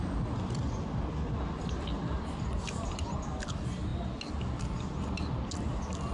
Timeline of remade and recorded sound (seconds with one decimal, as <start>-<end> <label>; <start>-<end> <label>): 0.0-6.1 recorded